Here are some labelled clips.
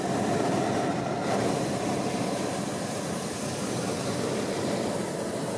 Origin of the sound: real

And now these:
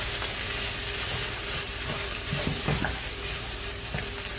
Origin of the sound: real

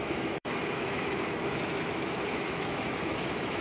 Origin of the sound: fake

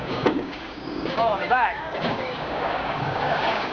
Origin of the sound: fake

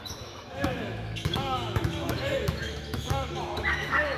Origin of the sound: fake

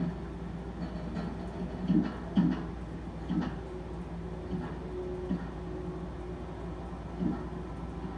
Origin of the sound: real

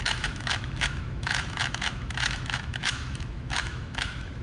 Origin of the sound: fake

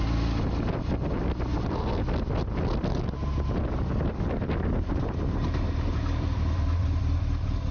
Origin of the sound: real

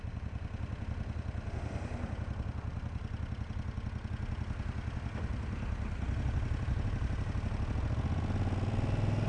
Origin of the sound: real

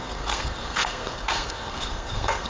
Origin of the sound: fake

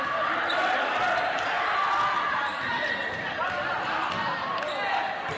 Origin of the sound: real